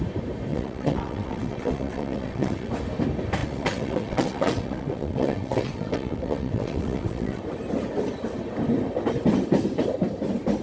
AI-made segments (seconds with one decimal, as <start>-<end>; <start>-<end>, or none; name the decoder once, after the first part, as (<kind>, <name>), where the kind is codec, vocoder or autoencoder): 0.5-2.7 (vocoder, WaveNeXt); 3.4-7.4